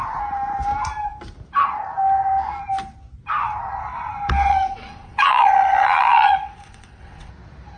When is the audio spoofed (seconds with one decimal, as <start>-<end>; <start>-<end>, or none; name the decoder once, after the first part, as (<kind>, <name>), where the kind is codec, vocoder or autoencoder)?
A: 4.5-7.3 (vocoder, WaveNeXt)